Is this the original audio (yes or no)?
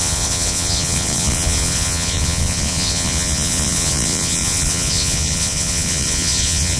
no